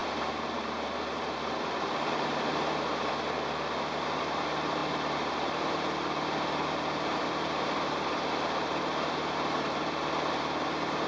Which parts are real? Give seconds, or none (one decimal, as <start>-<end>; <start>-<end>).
none

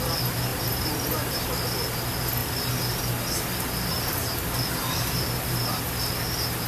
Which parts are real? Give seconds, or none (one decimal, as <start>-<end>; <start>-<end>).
0.0-0.5; 1.5-2.4; 3.1-3.9; 5.8-6.7

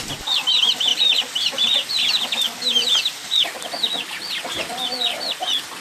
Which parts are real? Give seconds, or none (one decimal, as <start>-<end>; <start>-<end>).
0.0-5.8

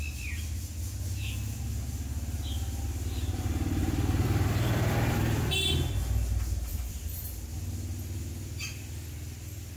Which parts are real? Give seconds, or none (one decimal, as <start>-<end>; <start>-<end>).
0.0-3.8; 5.5-6.7; 7.3-9.8

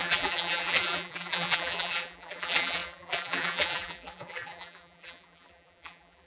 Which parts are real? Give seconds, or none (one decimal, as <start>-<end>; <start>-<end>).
none

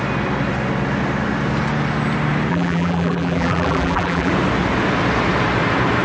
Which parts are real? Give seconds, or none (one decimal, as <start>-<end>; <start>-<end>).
0.0-2.5; 4.3-6.0

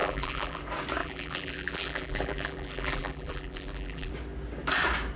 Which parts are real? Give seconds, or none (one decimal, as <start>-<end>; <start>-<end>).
0.6-1.0; 4.1-5.2

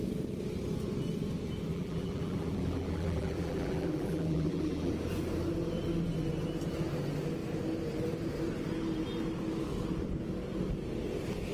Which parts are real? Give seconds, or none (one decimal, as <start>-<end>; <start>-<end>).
0.0-1.7; 4.9-11.5